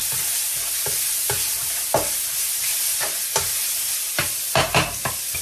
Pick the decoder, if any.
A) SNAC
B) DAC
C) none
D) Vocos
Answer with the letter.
C